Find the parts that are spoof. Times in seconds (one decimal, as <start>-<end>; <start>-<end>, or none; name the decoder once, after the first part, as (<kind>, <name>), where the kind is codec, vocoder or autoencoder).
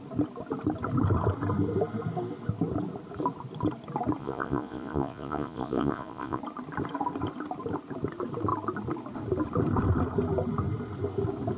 4.2-6.4 (vocoder, Vocos)